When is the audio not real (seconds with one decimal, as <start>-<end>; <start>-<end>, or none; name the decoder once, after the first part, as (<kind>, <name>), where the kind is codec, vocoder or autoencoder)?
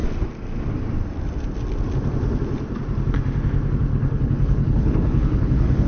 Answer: 3.9-5.9 (codec, HILCodec)